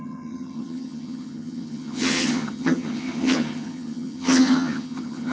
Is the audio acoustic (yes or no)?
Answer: no